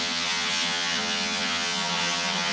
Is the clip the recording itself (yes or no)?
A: no